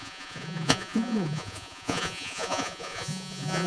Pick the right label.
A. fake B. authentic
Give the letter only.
A